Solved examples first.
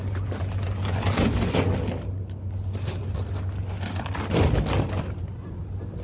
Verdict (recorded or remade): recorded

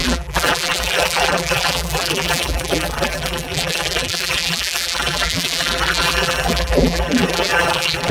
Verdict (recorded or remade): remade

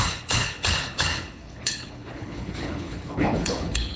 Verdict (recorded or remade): remade